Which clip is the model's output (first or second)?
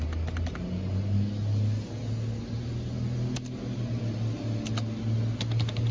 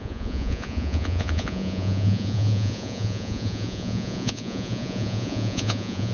second